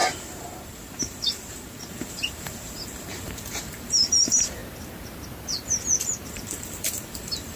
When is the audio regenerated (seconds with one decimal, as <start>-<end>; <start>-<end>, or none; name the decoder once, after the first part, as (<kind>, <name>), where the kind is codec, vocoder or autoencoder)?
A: 0.0-4.6 (vocoder, BigVGAN v2); 6.3-7.6